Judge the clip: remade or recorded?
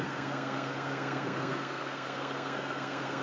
remade